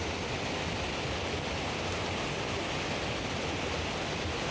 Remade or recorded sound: recorded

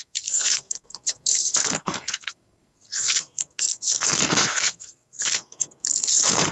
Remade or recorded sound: remade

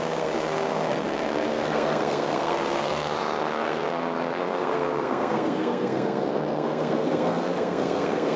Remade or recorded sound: remade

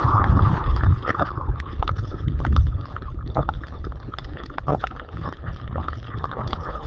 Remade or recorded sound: remade